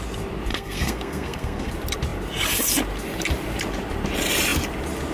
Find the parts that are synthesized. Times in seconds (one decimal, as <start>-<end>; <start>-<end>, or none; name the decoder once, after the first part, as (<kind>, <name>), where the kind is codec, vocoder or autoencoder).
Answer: 0.5-1.7 (codec, SNAC)